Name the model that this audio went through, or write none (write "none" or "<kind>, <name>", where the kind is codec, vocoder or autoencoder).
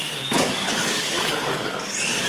codec, DAC